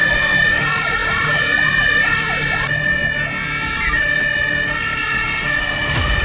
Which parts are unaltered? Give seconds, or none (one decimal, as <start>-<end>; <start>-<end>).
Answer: 3.0-4.0; 4.9-5.6